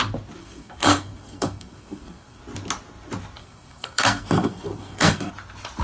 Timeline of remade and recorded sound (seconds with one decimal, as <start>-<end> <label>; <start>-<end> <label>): 0.0-0.4 recorded; 0.4-2.4 remade; 2.4-3.4 recorded; 3.4-5.3 remade; 5.3-5.8 recorded